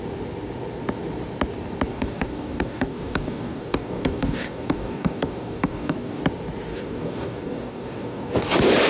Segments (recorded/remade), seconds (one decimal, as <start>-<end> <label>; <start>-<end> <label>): 0.0-1.9 recorded; 1.9-6.2 remade; 6.2-6.7 recorded; 6.7-8.3 remade; 8.3-8.9 recorded